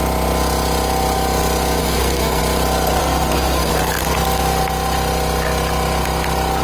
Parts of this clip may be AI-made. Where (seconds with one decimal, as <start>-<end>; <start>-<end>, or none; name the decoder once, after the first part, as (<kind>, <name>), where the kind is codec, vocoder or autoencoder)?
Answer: 1.8-2.4 (codec, SNAC); 3.0-3.7